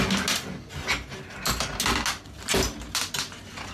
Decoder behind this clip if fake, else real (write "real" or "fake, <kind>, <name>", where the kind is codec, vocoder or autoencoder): real